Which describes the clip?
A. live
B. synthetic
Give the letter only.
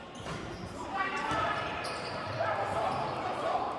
B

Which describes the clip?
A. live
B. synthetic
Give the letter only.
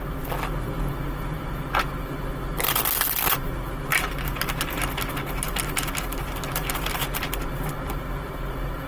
A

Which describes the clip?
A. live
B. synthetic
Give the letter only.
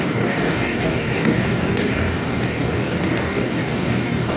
B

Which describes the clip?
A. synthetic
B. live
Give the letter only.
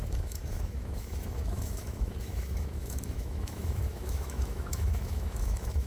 A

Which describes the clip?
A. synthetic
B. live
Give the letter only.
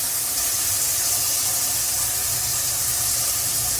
A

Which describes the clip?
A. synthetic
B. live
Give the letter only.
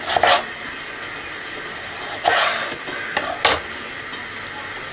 B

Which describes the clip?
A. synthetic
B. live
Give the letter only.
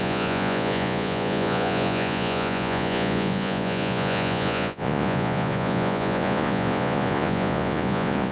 A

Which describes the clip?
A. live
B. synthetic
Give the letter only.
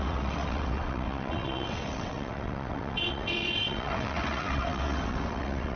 B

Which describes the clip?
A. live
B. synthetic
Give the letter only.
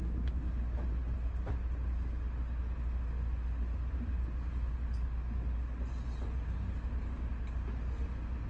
A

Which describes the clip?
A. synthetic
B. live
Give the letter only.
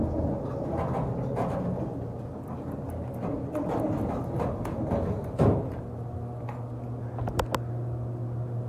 B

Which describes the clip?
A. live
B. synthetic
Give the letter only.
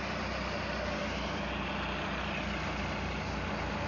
A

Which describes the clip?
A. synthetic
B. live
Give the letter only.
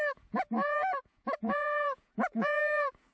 A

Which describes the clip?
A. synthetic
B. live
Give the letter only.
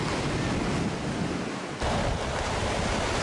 B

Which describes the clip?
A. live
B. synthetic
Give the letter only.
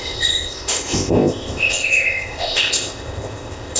B